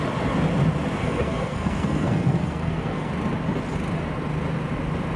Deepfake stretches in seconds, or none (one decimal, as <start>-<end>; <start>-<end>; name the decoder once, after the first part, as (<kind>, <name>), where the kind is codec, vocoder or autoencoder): 1.0-3.1 (codec, SNAC)